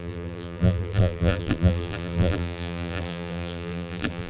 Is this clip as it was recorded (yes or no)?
no